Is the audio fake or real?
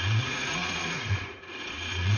fake